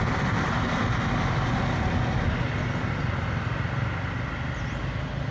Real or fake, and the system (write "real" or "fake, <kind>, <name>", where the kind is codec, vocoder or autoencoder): real